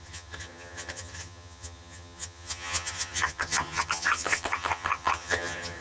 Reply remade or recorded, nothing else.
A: remade